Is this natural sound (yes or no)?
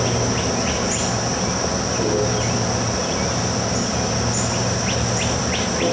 yes